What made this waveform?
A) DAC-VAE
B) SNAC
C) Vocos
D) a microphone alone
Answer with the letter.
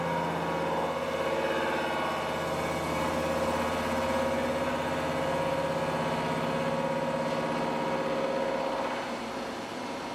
D